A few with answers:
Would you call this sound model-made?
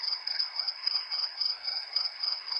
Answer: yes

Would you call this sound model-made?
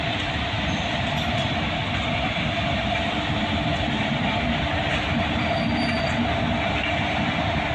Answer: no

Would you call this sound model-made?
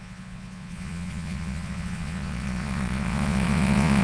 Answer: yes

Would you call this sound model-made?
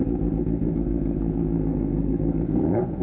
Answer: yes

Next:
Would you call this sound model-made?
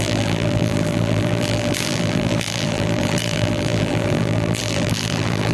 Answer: yes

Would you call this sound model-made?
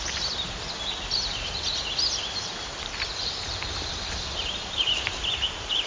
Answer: no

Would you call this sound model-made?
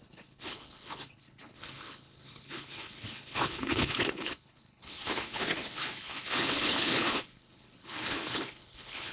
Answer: yes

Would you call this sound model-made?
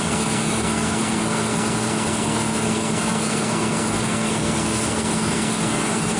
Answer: yes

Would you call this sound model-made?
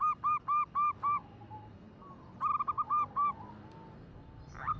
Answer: no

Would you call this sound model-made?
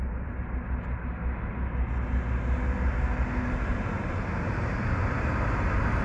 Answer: no